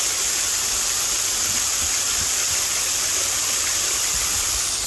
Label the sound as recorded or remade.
recorded